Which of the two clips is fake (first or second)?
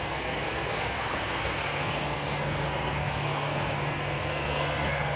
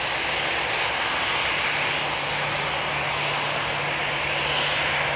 first